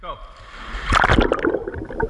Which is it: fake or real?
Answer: real